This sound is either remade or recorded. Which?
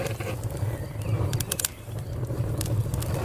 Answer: recorded